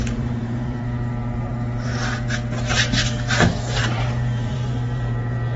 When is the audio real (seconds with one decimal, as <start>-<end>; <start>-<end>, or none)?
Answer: 1.9-3.8